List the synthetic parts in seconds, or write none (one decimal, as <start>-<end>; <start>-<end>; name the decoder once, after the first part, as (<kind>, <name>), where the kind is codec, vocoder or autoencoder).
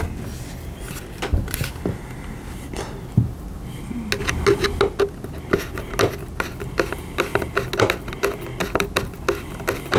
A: none